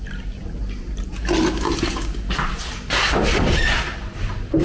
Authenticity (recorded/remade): recorded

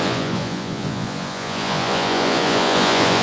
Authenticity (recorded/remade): remade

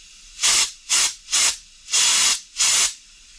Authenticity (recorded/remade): recorded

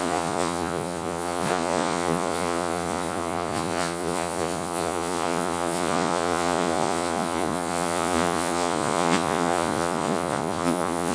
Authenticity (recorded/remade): remade